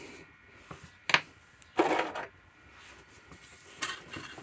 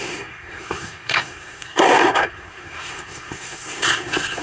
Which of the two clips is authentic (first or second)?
first